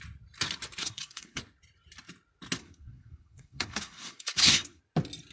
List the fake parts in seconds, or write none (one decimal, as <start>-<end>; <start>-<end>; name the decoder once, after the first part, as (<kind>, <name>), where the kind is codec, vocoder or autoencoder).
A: 0.8-1.4 (codec, SNAC); 2.6-4.8